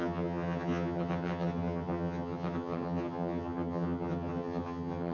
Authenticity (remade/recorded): remade